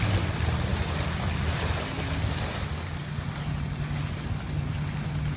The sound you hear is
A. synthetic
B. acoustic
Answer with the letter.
B